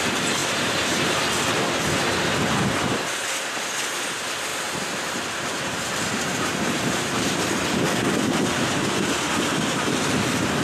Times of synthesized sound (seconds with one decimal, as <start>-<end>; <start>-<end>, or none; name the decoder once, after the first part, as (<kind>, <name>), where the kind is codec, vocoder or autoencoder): 0.4-1.2 (vocoder, BigVGAN v2); 4.5-7.5

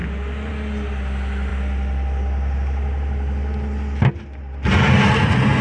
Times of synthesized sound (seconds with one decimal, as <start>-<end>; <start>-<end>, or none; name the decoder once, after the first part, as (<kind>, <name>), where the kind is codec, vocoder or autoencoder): none

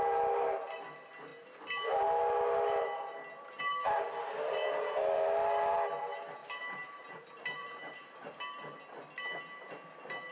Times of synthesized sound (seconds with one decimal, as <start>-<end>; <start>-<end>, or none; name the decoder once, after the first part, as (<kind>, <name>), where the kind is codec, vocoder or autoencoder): 6.4-8.8 (vocoder, BigVGAN v2)

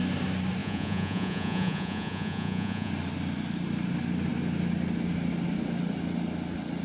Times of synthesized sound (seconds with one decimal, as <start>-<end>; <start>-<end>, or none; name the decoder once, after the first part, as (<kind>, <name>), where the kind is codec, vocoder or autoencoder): 0.6-2.9 (vocoder, Vocos)

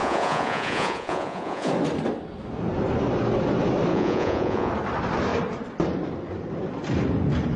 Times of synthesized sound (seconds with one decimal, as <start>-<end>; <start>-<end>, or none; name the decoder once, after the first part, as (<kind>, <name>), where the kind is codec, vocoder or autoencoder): 0.0-1.7 (vocoder, Vocos); 3.9-4.7

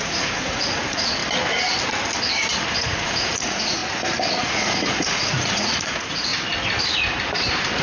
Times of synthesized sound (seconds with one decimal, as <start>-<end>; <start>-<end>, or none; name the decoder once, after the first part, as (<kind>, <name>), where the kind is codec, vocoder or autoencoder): 0.0-1.2 (vocoder, Vocos); 2.7-3.8; 4.4-6.3